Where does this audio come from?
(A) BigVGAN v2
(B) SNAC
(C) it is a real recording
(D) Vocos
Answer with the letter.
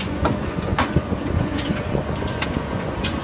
D